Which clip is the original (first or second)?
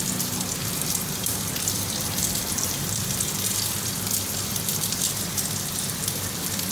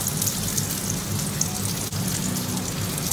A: second